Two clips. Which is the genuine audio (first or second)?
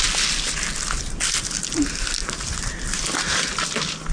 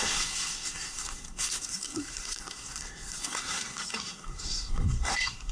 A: first